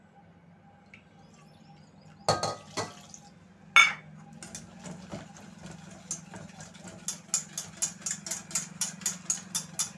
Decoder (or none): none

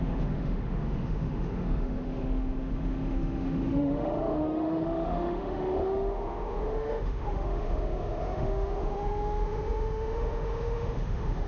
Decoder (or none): autoencoder, DAC-VAE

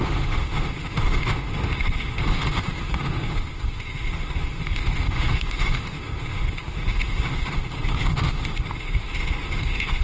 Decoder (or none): autoencoder, DAC-VAE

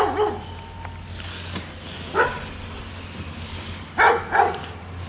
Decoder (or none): none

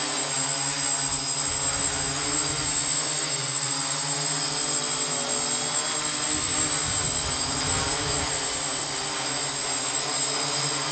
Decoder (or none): none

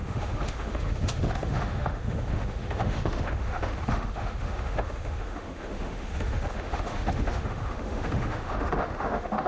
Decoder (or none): autoencoder, DAC-VAE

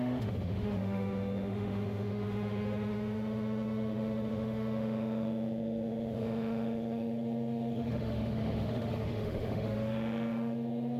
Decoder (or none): autoencoder, DAC-VAE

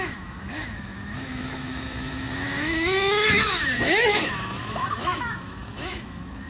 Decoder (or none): autoencoder, DAC-VAE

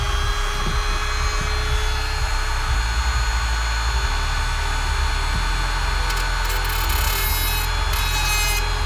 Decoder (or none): none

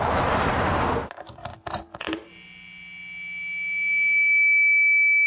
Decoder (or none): none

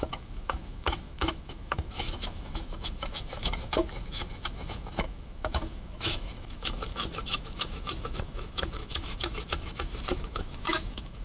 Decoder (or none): autoencoder, DAC-VAE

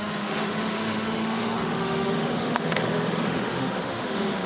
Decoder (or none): autoencoder, DAC-VAE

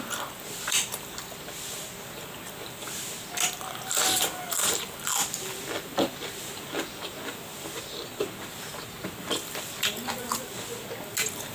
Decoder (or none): none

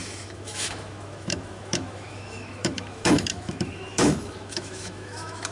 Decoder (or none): autoencoder, DAC-VAE